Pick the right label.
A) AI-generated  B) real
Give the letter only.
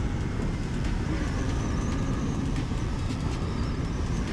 B